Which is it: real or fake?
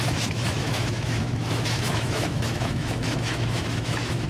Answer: fake